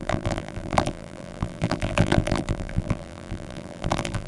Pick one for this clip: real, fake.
fake